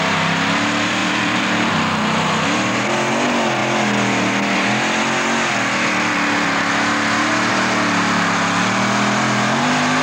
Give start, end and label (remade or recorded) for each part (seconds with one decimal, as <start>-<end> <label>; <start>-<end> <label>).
0.0-1.0 recorded; 1.0-1.7 remade; 1.7-10.0 recorded